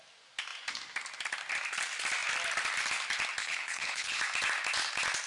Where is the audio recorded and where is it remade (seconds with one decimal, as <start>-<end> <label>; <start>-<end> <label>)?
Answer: 0.0-3.4 recorded; 3.4-4.2 remade; 4.2-5.3 recorded